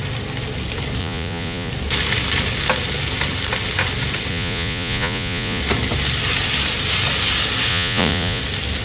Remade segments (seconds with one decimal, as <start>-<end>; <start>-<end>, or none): 1.0-1.7; 4.3-5.6; 7.7-8.4